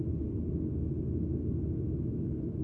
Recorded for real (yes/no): yes